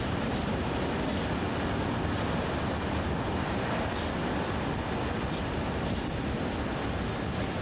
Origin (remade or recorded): recorded